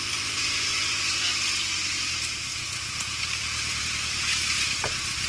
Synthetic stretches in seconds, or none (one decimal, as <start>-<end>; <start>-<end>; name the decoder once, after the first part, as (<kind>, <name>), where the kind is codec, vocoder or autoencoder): 2.5-3.8 (vocoder, Vocos)